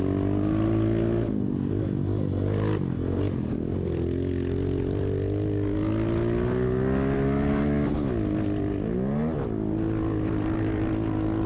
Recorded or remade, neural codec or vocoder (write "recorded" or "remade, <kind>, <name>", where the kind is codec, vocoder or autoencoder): recorded